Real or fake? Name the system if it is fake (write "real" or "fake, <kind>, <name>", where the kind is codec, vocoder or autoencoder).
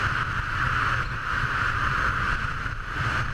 fake, vocoder, BigVGAN v2